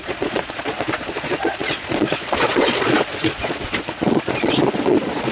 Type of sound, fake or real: fake